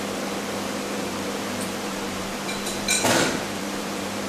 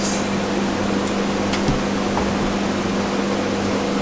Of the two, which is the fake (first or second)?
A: first